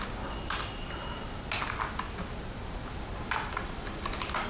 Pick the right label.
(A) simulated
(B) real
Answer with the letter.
B